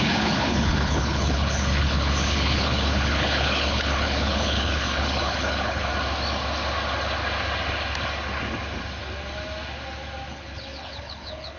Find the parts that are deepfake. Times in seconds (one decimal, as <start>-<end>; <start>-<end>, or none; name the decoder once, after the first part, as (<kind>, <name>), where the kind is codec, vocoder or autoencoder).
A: 0.0-5.9 (codec, HILCodec); 10.3-11.6